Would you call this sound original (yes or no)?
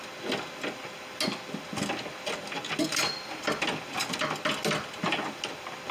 yes